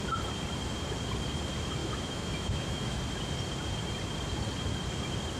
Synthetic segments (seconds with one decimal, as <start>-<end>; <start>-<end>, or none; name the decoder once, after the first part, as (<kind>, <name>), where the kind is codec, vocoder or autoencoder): 1.8-3.0 (autoencoder, DAC-VAE)